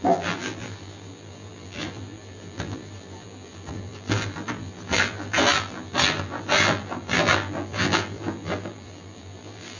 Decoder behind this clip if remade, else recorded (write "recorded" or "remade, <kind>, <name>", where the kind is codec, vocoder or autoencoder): remade, vocoder, BigVGAN v2